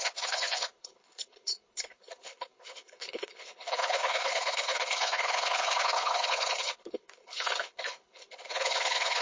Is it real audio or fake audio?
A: fake